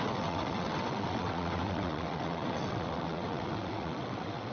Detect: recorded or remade remade